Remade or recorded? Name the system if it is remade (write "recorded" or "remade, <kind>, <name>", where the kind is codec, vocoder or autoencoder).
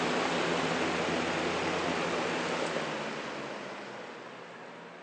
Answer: recorded